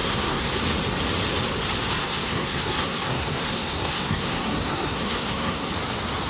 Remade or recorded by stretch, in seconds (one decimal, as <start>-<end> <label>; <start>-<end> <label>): 0.0-0.5 remade; 0.5-1.9 recorded; 1.9-5.7 remade; 5.7-6.3 recorded